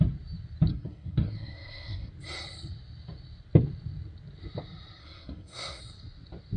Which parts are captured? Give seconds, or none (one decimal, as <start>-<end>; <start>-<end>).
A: 0.0-0.7; 2.1-5.0; 5.8-6.6